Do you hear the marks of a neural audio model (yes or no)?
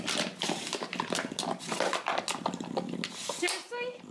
no